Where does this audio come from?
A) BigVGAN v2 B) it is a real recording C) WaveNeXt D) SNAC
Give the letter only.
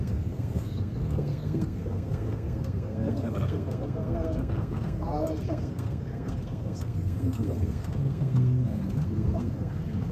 D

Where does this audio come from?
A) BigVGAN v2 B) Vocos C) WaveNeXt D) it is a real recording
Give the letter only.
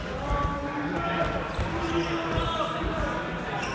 D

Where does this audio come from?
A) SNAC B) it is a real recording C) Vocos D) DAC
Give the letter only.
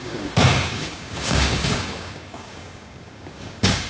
D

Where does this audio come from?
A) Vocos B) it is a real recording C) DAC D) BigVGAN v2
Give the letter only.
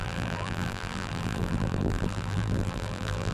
D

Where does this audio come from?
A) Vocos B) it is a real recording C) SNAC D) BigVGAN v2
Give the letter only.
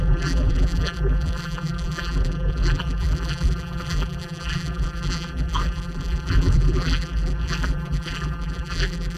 D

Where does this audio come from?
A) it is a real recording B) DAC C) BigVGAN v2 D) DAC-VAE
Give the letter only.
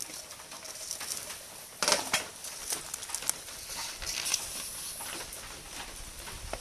A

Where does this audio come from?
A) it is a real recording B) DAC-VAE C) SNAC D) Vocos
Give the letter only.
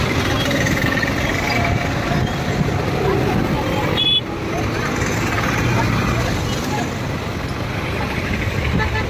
A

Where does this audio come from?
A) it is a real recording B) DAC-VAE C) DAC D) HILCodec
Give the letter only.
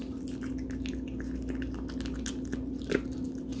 A